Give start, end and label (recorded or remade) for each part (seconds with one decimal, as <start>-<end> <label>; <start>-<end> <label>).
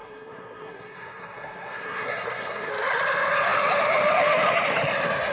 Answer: 0.0-2.7 remade; 2.7-5.3 recorded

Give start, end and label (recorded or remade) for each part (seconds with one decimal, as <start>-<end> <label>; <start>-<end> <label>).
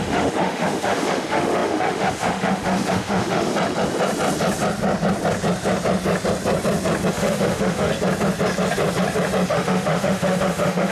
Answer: 0.0-3.5 remade; 3.5-7.1 recorded; 7.1-7.9 remade; 7.9-9.5 recorded; 9.5-10.9 remade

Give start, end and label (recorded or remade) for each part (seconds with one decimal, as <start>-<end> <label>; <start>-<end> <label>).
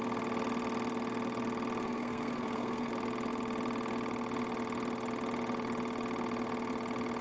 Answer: 0.0-1.8 recorded; 1.8-2.9 remade; 2.9-7.2 recorded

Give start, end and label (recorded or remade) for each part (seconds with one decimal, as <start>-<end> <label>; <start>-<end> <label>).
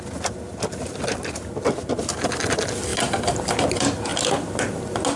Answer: 0.0-5.2 recorded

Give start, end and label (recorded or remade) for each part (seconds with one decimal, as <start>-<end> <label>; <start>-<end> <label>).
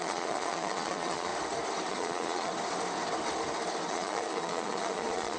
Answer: 0.0-1.3 remade; 1.3-1.9 recorded; 1.9-2.5 remade; 2.5-3.9 recorded; 3.9-5.4 remade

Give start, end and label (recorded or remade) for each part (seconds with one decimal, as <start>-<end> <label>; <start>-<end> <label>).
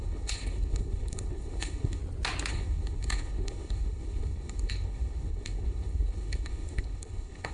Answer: 0.0-2.0 remade; 2.0-2.5 recorded; 2.5-7.5 remade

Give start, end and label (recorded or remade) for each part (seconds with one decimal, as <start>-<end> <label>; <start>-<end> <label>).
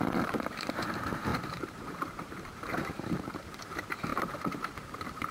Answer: 0.0-5.3 remade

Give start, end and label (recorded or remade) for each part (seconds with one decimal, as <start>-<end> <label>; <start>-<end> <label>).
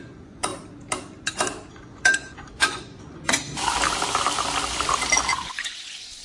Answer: 0.0-0.5 remade; 0.5-1.7 recorded; 1.7-3.4 remade; 3.4-5.3 recorded; 5.3-6.2 remade